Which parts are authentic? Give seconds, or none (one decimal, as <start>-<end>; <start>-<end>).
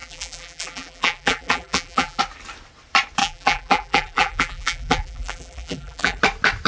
2.2-3.2; 6.2-6.7